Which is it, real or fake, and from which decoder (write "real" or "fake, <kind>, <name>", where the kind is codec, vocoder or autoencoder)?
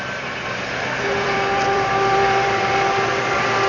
fake, vocoder, BigVGAN v2